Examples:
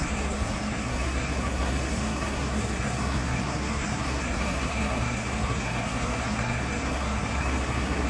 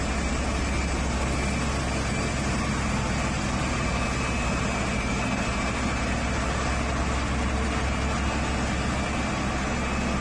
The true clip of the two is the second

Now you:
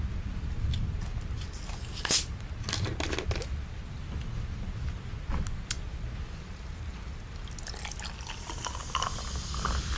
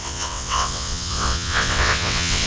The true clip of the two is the first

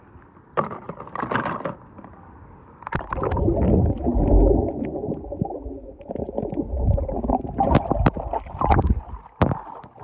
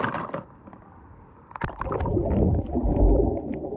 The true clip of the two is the first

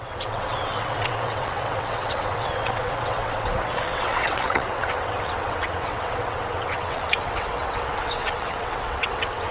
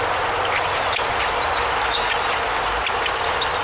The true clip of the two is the second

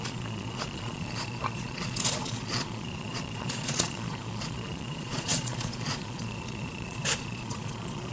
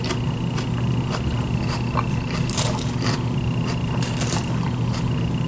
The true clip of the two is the second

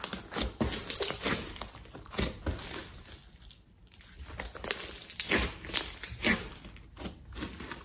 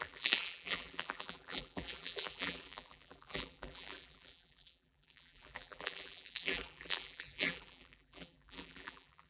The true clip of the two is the first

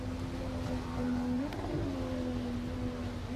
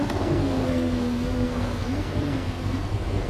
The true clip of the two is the first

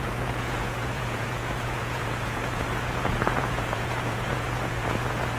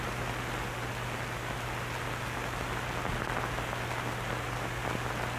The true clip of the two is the second